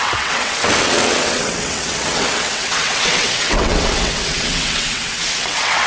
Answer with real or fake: fake